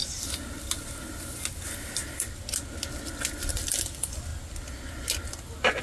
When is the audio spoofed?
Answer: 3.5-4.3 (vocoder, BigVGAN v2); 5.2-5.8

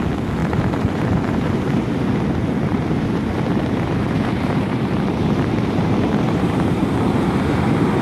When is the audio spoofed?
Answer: 0.4-2.1 (vocoder, BigVGAN v2); 2.7-6.8

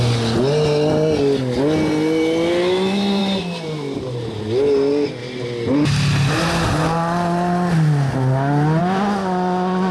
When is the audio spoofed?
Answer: 3.2-4.4 (vocoder, BigVGAN v2)

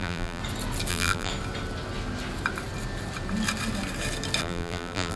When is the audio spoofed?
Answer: 0.0-0.4 (vocoder, BigVGAN v2); 0.9-1.3; 4.4-5.2